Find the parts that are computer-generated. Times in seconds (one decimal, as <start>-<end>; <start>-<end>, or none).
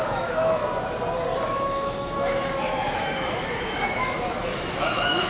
0.0-0.6; 1.4-5.3